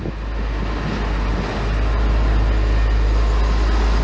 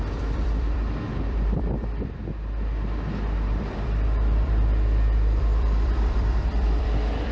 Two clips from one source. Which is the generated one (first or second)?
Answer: second